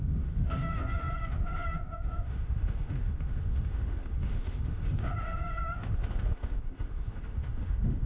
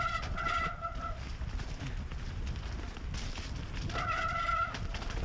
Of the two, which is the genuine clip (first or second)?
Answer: second